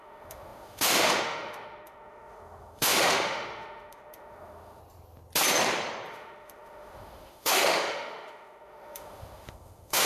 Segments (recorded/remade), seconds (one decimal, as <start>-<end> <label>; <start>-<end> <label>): 0.0-4.8 remade; 4.8-6.1 recorded; 6.1-10.1 remade